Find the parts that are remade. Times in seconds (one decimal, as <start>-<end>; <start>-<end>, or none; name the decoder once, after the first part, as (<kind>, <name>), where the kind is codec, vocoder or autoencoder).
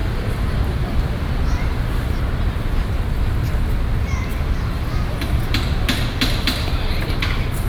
0.0-2.2 (vocoder, BigVGAN v2); 4.3-7.3